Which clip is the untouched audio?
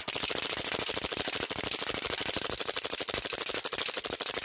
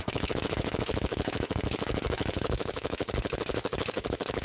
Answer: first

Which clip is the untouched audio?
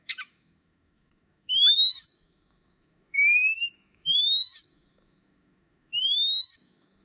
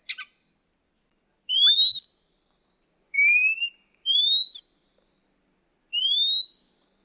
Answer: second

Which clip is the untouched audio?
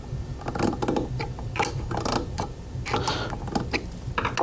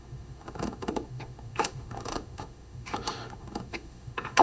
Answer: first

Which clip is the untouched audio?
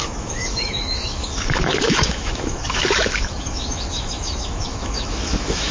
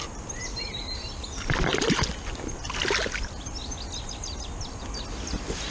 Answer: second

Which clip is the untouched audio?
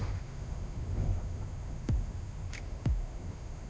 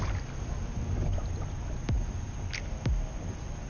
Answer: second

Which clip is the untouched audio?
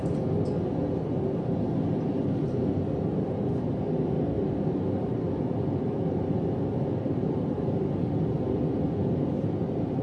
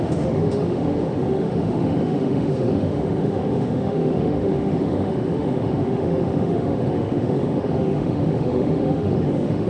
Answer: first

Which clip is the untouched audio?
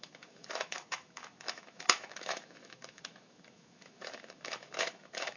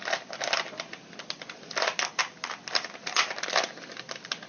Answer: second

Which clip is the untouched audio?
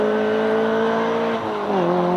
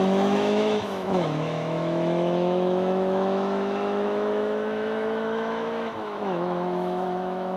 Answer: first